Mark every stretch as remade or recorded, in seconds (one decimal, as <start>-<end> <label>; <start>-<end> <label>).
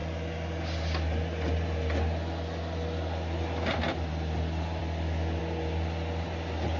0.0-6.8 recorded